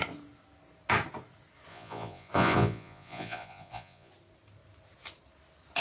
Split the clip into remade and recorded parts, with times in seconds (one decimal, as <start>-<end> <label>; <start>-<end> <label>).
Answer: 0.0-1.7 recorded; 1.7-4.1 remade; 4.1-5.8 recorded